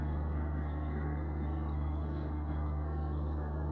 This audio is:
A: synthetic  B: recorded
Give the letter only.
A